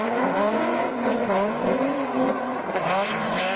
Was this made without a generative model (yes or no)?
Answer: no